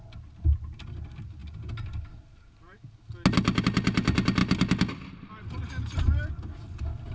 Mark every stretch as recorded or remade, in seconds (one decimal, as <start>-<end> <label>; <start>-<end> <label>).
0.0-7.1 recorded